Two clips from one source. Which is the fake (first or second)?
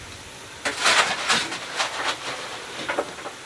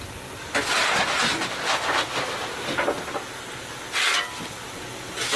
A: first